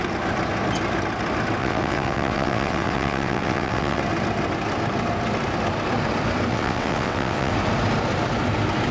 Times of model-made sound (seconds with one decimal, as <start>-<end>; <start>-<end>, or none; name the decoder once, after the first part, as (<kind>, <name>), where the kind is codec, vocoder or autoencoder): 1.6-4.0 (vocoder, WaveNeXt); 6.5-7.5